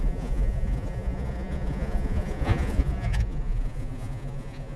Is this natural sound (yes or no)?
no